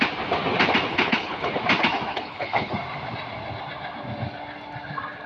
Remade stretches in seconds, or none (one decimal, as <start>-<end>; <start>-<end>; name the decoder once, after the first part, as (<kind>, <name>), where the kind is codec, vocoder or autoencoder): 0.9-1.5 (codec, HILCodec); 2.1-2.7